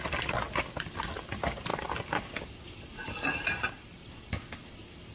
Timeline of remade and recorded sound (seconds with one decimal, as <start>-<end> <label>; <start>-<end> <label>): 0.0-5.1 recorded